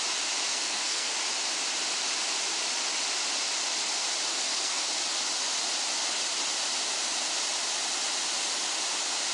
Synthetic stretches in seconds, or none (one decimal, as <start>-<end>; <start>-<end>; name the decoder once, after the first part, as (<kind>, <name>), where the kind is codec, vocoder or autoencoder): 0.5-1.1 (codec, SNAC); 4.3-4.9